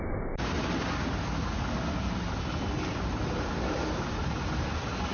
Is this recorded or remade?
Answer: recorded